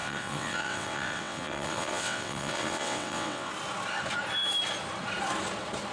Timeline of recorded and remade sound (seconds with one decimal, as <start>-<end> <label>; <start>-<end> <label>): 0.0-3.5 remade; 3.5-5.9 recorded